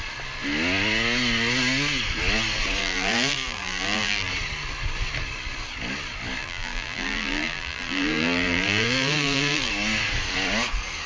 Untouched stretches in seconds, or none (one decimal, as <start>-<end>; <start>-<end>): 0.0-2.8; 4.3-6.4; 9.7-11.1